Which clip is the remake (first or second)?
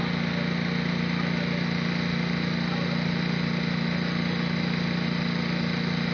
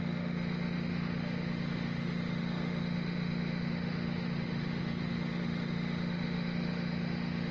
second